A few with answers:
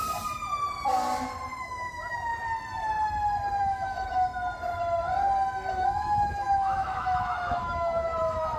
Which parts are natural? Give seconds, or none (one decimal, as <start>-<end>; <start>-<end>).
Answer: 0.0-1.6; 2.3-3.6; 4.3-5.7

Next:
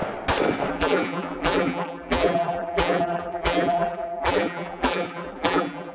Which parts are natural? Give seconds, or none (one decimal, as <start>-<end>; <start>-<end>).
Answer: 0.0-0.7

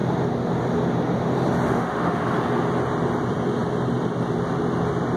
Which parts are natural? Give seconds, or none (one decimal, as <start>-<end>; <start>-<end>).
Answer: 0.0-1.7; 2.2-5.2

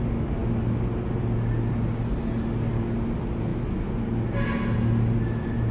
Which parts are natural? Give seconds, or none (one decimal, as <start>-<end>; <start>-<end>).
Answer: 0.0-5.7

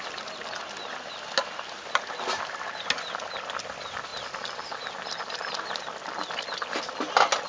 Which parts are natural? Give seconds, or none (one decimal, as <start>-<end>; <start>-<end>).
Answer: 0.0-7.5